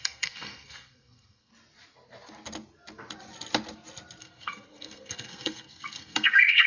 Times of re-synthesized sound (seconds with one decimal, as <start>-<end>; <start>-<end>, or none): 0.0-1.5; 4.2-6.7